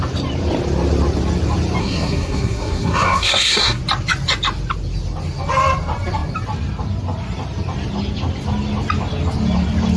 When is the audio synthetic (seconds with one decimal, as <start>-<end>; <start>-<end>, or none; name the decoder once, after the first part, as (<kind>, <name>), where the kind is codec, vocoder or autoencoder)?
1.8-3.8 (codec, SNAC)